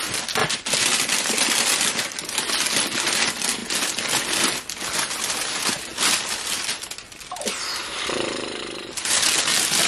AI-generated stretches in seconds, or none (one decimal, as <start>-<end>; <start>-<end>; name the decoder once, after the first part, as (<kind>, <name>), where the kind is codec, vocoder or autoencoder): 0.4-2.5 (vocoder, BigVGAN v2); 5.9-8.6